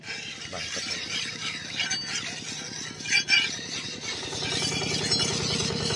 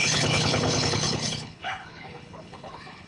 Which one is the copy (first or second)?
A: second